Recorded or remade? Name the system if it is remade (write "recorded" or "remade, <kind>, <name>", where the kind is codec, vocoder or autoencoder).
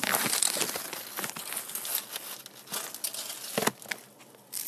recorded